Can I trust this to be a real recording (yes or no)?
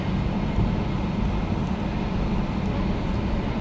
yes